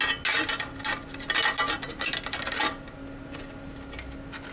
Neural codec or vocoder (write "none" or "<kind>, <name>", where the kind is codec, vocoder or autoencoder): none